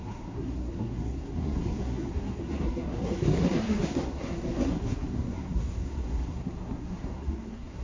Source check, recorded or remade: remade